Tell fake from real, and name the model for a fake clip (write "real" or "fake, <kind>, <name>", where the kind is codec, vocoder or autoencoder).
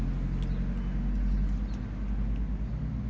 real